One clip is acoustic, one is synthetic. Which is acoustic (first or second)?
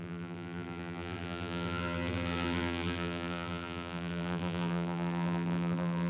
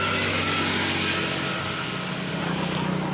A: second